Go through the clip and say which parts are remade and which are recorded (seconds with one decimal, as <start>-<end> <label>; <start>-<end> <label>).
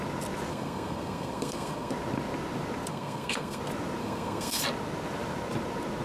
0.0-0.5 recorded; 0.5-1.9 remade; 1.9-2.9 recorded; 2.9-3.6 remade; 3.6-4.0 recorded; 4.0-4.6 remade; 4.6-6.0 recorded